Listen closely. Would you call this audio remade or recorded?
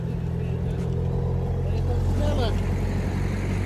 recorded